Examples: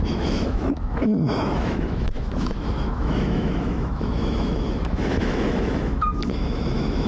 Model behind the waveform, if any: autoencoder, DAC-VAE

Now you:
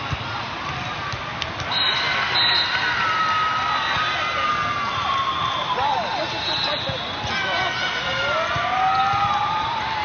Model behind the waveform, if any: none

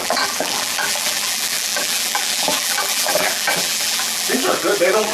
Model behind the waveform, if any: vocoder, BigVGAN v2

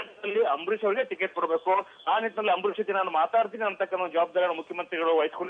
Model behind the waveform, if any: none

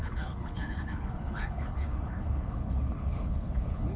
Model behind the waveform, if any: codec, HILCodec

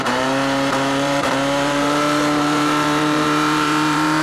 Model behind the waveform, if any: vocoder, BigVGAN v2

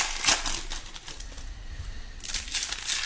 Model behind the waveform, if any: none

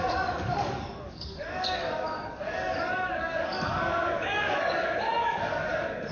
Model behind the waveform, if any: codec, DAC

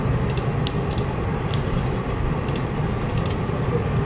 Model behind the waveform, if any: vocoder, BigVGAN v2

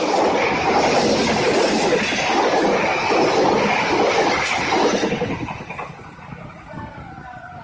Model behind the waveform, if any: none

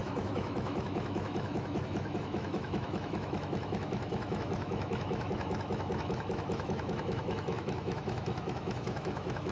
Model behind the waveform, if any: autoencoder, DAC-VAE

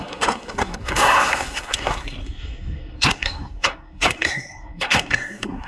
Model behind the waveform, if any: codec, SNAC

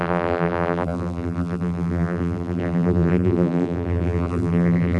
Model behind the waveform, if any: vocoder, BigVGAN v2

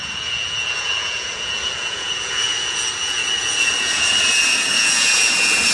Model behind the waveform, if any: vocoder, Vocos